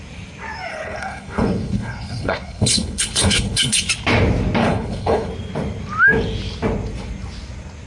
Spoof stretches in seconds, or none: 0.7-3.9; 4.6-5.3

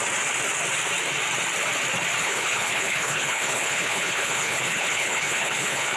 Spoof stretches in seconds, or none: 2.2-6.0

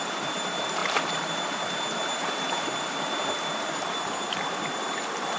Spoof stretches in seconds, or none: none

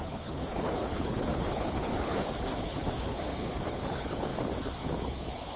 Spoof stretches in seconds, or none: 0.0-4.3; 4.8-5.6